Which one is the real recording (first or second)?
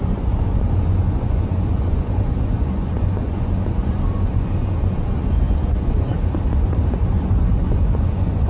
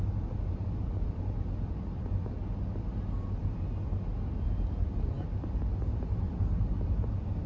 second